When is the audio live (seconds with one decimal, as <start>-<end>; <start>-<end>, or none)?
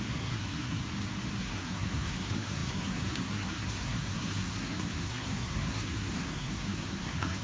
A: 0.8-1.4